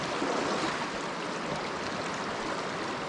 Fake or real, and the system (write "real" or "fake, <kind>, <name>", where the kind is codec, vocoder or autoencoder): real